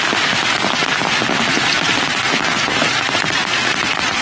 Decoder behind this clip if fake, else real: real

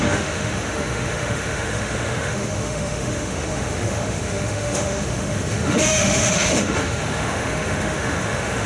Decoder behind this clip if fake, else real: fake, autoencoder, DAC-VAE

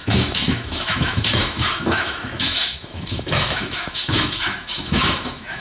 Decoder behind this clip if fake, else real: fake, autoencoder, DAC-VAE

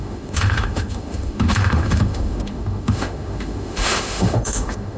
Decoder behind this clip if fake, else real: fake, autoencoder, DAC-VAE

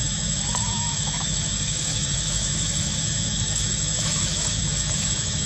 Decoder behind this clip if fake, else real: fake, autoencoder, DAC-VAE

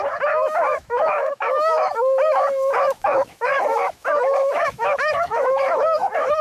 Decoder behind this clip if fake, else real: fake, autoencoder, DAC-VAE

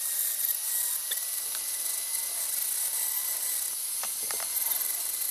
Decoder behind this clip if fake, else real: real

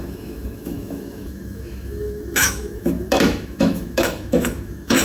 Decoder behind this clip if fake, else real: fake, autoencoder, DAC-VAE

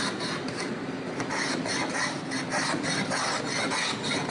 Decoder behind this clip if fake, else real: real